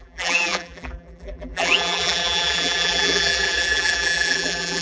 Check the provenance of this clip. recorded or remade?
remade